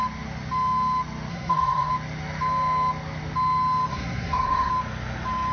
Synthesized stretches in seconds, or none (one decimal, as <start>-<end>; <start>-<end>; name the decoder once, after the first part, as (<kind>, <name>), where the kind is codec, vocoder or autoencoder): 1.3-1.9 (codec, SNAC); 3.9-4.7